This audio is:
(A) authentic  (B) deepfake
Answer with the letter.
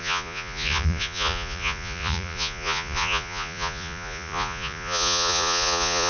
B